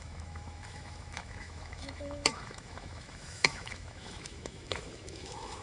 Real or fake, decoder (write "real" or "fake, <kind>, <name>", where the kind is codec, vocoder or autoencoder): fake, autoencoder, DAC-VAE